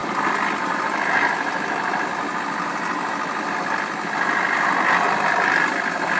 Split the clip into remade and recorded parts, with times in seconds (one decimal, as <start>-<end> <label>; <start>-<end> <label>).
0.0-6.2 recorded